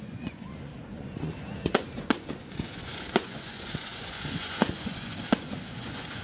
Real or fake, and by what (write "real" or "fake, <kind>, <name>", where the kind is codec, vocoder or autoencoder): fake, vocoder, Vocos